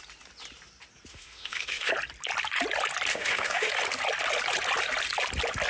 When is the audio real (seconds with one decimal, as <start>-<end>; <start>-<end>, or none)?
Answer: 0.0-1.1; 1.9-3.1; 3.7-5.7